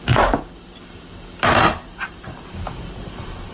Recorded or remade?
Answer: remade